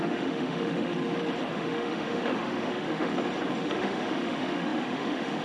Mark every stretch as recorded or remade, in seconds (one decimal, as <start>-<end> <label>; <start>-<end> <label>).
0.0-0.9 remade; 0.9-1.5 recorded; 1.5-3.1 remade; 3.1-3.6 recorded; 3.6-5.4 remade